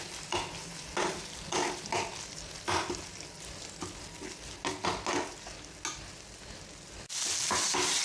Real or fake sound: real